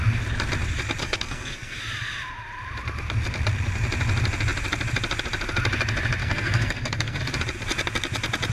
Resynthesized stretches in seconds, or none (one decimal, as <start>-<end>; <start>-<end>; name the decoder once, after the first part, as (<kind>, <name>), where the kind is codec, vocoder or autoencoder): 1.0-1.8 (codec, SNAC); 6.2-7.2